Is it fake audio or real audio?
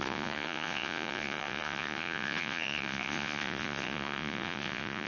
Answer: fake